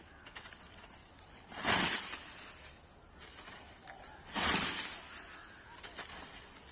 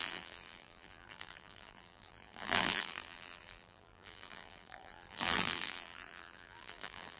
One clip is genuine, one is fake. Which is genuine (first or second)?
first